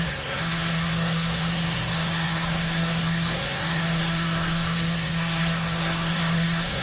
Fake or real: fake